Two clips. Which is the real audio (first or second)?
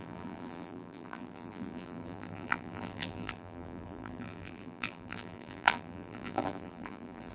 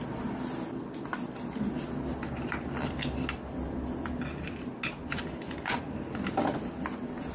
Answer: second